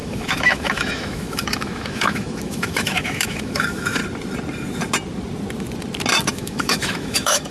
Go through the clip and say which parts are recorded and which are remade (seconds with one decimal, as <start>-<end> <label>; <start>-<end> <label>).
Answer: 0.0-4.0 remade; 4.0-6.3 recorded; 6.3-7.5 remade